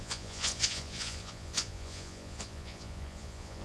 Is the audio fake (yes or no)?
yes